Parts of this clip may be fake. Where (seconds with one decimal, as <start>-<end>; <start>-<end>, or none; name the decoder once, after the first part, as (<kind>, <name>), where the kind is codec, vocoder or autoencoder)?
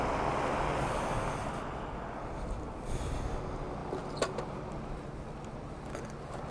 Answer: none